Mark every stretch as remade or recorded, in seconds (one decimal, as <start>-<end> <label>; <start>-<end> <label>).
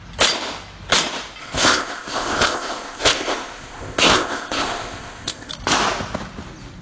0.0-1.4 recorded; 1.4-5.5 remade; 5.5-6.8 recorded